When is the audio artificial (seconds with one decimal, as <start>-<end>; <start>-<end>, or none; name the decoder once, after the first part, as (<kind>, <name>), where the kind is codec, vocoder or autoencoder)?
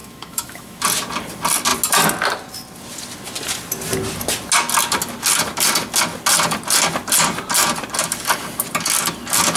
0.0-0.8 (autoencoder, DAC-VAE)